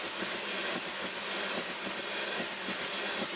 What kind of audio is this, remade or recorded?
recorded